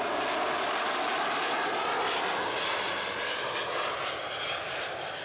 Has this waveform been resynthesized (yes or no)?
no